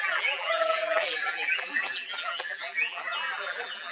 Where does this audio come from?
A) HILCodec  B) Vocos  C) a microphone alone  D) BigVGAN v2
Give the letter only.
D